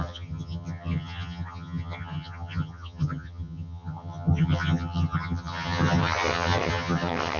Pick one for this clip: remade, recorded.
remade